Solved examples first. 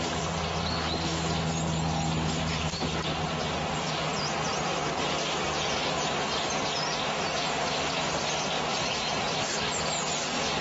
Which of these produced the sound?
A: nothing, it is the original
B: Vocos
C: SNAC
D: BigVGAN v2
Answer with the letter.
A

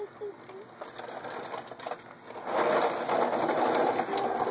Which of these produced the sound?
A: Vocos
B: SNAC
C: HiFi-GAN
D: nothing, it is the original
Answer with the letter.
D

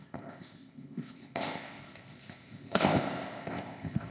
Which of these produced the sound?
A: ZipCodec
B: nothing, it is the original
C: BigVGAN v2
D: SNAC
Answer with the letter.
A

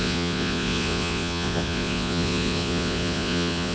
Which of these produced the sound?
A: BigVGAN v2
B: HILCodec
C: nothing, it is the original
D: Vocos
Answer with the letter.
D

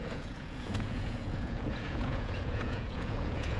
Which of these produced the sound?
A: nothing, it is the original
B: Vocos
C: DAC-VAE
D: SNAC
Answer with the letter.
B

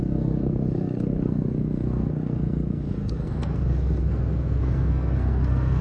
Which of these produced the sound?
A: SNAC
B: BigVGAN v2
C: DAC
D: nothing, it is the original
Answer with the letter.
A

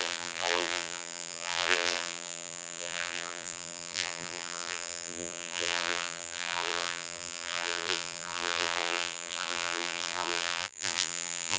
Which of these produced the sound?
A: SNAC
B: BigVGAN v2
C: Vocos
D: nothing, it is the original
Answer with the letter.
B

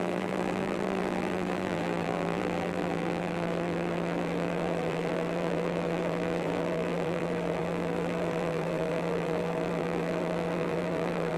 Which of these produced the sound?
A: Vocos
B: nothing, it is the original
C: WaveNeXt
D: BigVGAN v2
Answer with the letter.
D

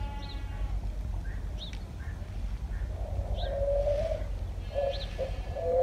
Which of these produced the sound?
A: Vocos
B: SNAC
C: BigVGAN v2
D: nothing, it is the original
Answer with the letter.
D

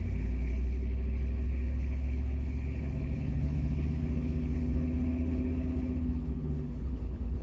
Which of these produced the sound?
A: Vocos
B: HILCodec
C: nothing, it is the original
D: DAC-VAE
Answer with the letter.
B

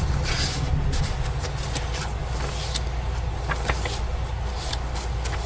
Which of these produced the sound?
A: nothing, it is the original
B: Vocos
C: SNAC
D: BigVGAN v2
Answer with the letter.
A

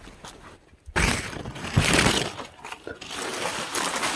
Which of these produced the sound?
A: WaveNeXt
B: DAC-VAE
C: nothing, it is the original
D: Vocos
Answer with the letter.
C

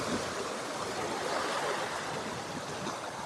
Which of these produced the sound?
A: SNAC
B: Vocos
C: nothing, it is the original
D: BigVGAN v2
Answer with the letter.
C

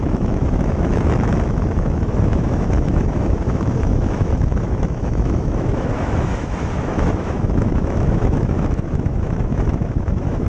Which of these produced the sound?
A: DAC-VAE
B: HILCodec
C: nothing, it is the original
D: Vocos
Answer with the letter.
A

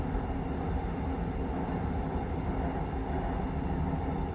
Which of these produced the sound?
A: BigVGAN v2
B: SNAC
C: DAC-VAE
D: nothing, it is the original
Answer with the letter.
D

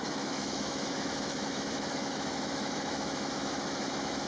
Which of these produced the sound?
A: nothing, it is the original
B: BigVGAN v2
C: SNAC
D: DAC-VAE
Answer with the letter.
D